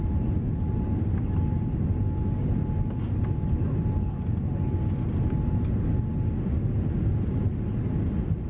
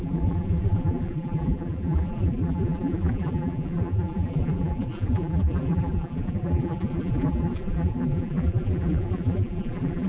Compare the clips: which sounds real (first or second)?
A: first